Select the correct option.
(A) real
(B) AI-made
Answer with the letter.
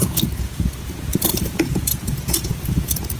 B